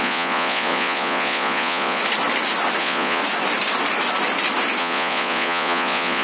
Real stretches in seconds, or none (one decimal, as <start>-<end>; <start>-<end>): 2.0-2.8; 3.2-4.8